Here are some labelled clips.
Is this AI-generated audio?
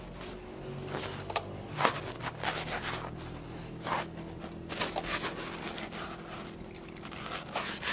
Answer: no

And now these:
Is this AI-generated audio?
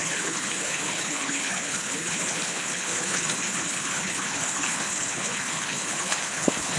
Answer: yes